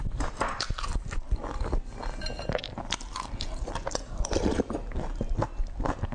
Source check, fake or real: real